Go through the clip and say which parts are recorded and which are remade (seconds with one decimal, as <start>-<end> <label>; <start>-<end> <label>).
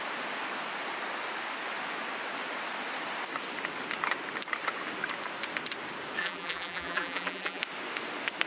0.0-6.2 recorded; 6.2-7.6 remade; 7.6-8.5 recorded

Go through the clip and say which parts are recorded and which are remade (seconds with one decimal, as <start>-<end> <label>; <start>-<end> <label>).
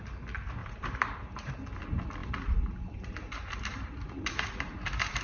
0.0-0.6 recorded; 0.6-1.5 remade; 1.5-2.2 recorded; 2.2-5.2 remade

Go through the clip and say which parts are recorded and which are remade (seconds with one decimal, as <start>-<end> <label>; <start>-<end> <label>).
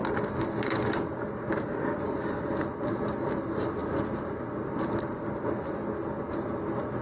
0.0-7.0 recorded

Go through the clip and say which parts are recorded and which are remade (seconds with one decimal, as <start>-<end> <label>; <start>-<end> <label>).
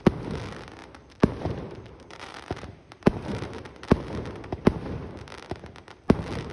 0.0-0.8 recorded; 0.8-3.7 remade; 3.7-6.5 recorded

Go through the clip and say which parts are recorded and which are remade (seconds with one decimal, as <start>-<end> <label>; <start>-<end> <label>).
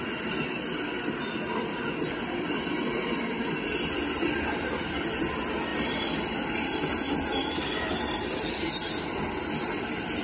0.0-10.2 recorded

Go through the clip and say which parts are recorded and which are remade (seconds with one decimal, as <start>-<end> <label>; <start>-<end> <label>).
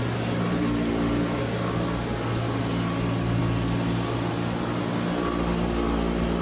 0.0-6.4 recorded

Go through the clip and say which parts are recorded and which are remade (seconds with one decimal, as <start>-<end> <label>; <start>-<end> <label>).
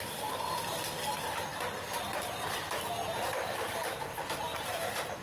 0.0-1.5 recorded; 1.5-2.3 remade; 2.3-3.0 recorded; 3.0-4.1 remade; 4.1-4.5 recorded; 4.5-5.2 remade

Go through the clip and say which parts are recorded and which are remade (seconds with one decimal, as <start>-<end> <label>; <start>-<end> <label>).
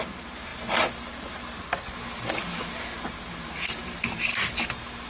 0.0-1.7 remade; 1.7-2.8 recorded; 2.8-4.3 remade; 4.3-5.1 recorded